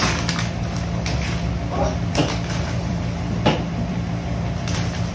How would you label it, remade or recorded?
recorded